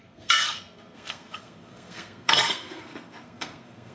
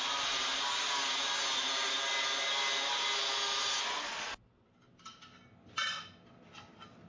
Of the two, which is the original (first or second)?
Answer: second